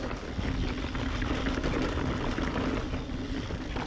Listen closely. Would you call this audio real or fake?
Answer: real